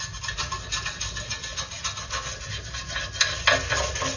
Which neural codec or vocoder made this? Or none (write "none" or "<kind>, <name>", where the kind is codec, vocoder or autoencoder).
none